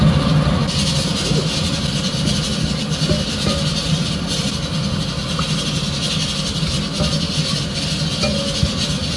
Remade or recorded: recorded